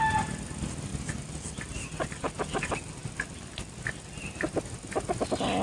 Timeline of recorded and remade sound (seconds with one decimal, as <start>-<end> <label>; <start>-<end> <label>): 0.0-5.6 recorded